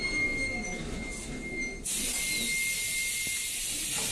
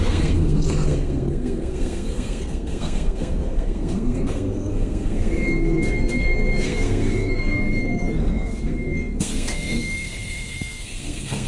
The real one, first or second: first